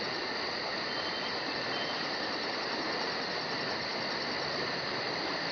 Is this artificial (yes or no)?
no